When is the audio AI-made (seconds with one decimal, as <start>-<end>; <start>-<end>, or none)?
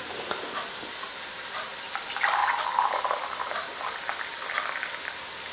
none